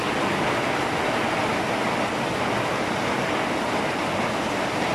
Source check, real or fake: real